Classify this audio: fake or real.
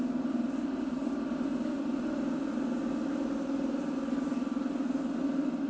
real